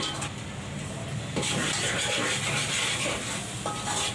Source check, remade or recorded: recorded